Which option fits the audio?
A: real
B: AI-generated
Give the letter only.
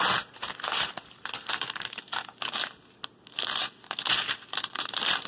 A